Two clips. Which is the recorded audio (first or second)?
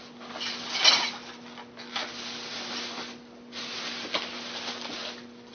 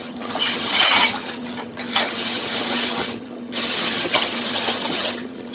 first